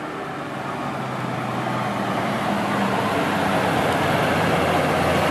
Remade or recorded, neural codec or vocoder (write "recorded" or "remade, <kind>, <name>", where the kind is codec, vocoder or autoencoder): recorded